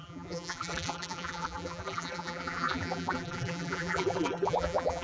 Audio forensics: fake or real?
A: fake